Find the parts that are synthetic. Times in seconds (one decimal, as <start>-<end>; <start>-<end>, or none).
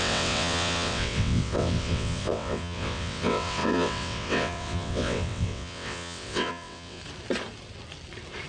0.0-7.0